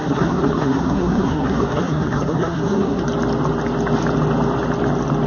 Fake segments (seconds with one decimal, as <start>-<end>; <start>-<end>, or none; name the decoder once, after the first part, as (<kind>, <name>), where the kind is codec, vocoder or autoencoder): 0.0-3.0 (codec, SNAC)